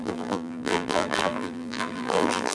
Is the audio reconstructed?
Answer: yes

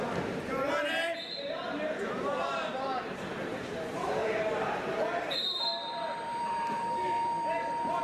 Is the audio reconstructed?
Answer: yes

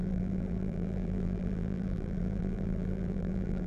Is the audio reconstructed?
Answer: yes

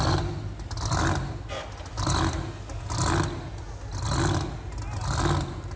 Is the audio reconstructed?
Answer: no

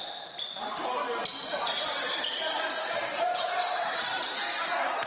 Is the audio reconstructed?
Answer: yes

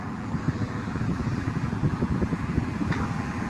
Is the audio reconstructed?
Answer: yes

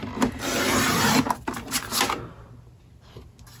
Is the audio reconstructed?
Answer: no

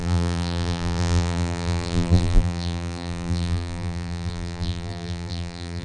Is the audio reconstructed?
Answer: yes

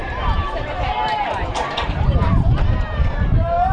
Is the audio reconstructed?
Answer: yes